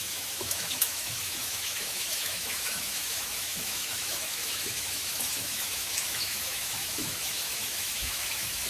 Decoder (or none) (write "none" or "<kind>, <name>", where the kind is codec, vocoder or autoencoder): autoencoder, DAC-VAE